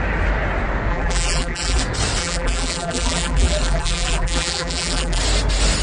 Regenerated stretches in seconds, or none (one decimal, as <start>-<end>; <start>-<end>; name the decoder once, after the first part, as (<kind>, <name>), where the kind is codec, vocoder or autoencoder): 0.9-1.8 (vocoder, BigVGAN v2); 2.2-5.2